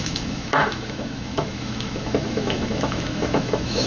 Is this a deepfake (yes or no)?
yes